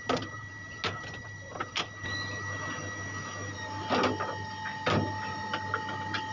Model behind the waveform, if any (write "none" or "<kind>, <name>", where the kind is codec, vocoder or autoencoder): none